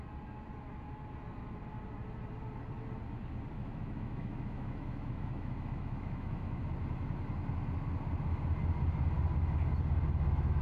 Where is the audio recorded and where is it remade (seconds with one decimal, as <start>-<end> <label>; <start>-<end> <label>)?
0.0-3.6 recorded; 3.6-6.6 remade; 6.6-10.6 recorded